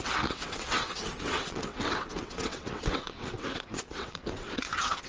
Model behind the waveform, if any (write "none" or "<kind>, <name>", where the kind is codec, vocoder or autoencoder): vocoder, WaveNeXt